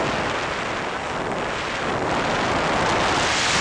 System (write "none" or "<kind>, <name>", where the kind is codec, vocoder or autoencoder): none